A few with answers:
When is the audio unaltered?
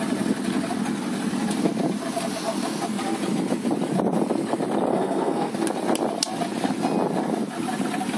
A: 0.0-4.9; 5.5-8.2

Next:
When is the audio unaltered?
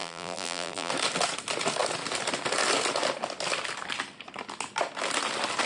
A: 0.9-5.7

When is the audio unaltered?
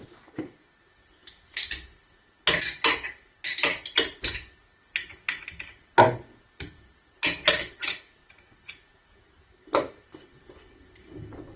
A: 0.0-11.6